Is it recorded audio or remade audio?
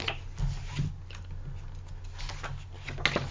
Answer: recorded